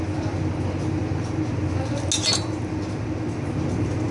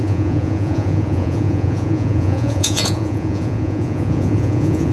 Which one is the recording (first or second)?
first